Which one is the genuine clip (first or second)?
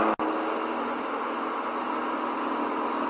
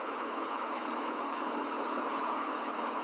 first